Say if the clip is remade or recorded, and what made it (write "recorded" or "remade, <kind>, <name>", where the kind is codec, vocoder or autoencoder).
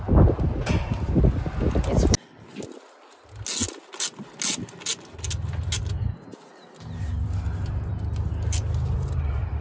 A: recorded